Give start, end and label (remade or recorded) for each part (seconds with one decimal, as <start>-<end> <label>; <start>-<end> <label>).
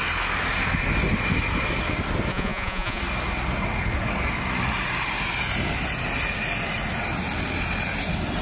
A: 0.0-2.3 recorded; 2.3-3.0 remade; 3.0-8.4 recorded